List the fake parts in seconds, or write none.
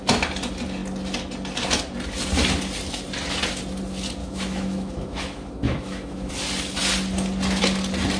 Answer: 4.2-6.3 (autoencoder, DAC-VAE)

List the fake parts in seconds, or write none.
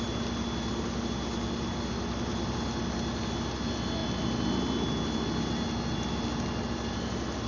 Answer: none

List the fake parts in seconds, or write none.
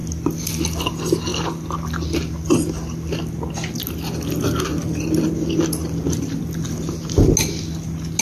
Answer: 0.0-0.8 (vocoder, BigVGAN v2); 1.3-3.2; 4.7-6.4